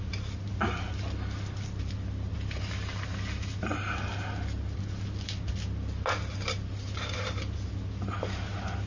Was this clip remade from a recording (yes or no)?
no